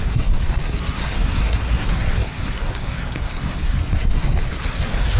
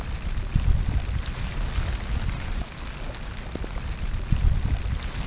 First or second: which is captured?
second